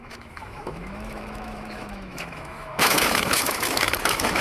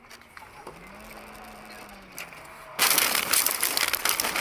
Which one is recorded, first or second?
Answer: second